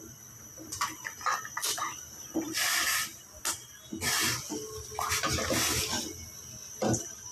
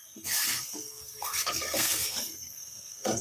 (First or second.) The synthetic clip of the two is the second